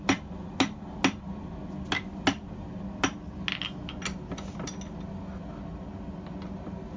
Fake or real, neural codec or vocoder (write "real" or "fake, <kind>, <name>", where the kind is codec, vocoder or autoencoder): real